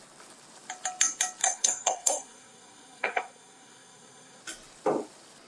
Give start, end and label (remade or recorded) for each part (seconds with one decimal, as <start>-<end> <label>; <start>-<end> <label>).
0.0-1.4 recorded; 1.4-4.4 remade; 4.4-5.5 recorded